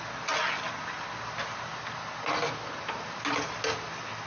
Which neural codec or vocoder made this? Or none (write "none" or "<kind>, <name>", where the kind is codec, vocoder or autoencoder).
none